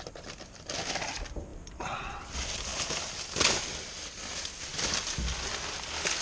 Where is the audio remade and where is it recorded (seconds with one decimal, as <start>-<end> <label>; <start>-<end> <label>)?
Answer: 0.0-6.2 recorded